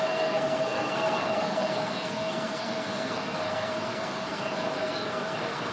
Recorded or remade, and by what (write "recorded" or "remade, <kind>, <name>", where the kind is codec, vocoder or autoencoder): remade, codec, SNAC